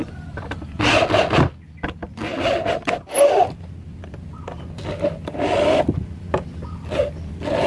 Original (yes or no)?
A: yes